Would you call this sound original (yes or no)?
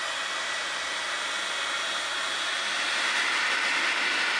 yes